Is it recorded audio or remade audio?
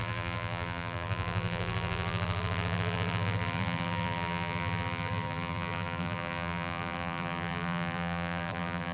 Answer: remade